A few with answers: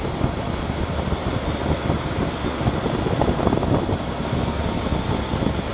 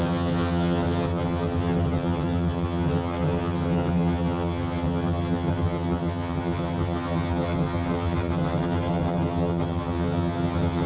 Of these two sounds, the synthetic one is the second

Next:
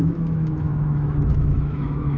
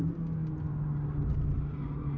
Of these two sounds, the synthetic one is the first